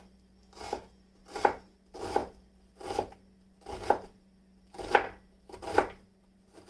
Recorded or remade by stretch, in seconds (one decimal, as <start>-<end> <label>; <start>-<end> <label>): 0.0-6.7 recorded